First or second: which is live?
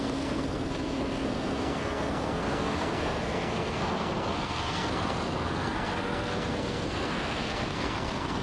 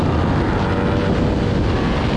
second